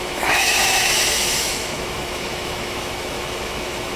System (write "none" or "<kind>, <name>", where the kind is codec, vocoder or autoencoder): autoencoder, DAC-VAE